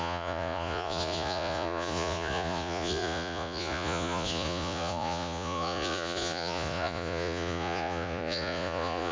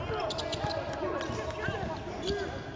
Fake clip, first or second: first